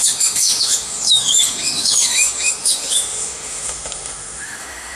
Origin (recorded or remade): remade